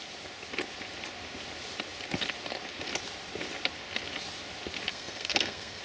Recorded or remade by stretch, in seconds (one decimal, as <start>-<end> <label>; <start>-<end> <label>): 0.0-4.9 recorded; 4.9-5.8 remade